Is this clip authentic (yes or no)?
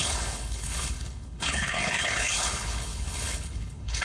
no